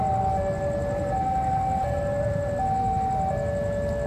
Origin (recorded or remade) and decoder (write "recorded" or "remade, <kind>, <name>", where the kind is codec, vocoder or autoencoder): recorded